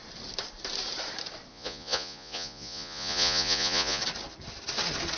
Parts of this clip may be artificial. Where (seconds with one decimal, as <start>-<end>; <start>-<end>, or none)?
1.5-4.0